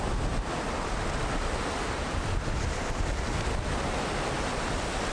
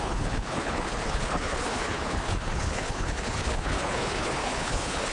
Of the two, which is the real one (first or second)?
first